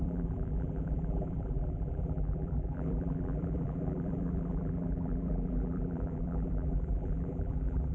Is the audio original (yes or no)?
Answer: no